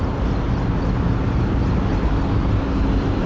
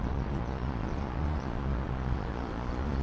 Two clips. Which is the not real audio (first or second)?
second